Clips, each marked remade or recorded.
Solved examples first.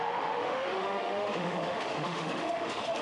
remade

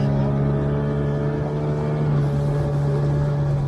recorded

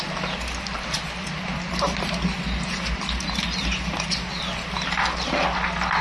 recorded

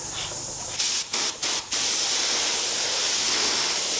recorded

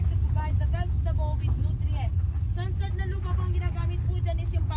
recorded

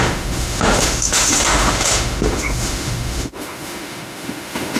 remade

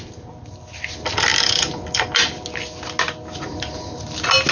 recorded